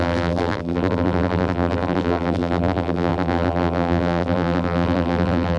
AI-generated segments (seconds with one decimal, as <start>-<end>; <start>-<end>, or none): 0.0-5.6